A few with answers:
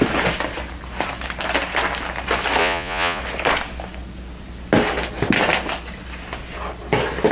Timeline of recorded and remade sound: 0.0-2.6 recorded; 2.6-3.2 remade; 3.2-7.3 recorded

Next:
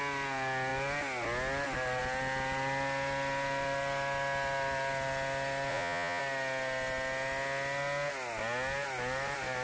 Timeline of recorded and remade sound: 0.0-5.7 recorded; 5.7-6.2 remade; 6.2-9.6 recorded